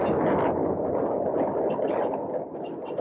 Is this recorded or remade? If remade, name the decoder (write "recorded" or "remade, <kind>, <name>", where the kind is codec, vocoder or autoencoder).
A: recorded